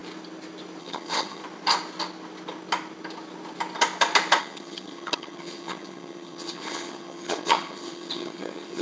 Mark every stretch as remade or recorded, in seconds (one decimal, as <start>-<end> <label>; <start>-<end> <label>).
0.0-0.8 recorded; 0.8-1.4 remade; 1.4-4.4 recorded; 4.4-8.8 remade